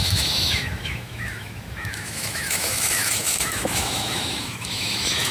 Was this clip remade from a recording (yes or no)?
yes